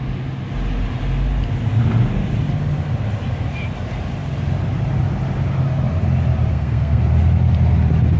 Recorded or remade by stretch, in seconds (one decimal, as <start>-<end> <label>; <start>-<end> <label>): 0.0-6.5 recorded; 6.5-7.0 remade; 7.0-8.2 recorded